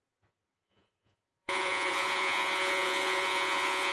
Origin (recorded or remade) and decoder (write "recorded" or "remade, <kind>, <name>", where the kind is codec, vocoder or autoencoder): remade, vocoder, Vocos